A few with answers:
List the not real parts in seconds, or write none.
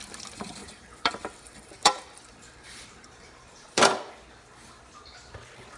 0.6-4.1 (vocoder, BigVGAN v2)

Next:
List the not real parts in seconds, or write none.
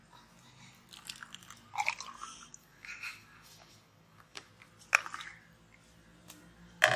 2.5-4.5 (codec, DAC)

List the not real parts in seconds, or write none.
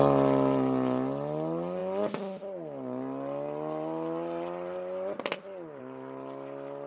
none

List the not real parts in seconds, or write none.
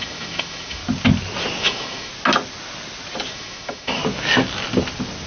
0.0-0.8 (autoencoder, DAC-VAE); 1.6-2.1; 3.3-4.0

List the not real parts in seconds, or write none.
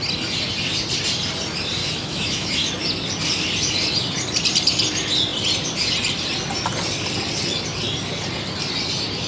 1.8-2.7 (autoencoder, DAC-VAE)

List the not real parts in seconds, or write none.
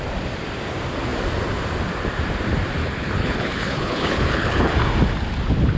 2.8-4.7 (codec, HILCodec)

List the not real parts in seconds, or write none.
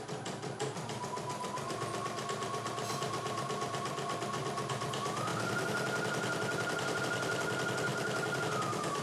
5.3-7.0 (vocoder, BigVGAN v2); 7.9-8.4